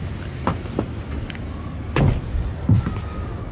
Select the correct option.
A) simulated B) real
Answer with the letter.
B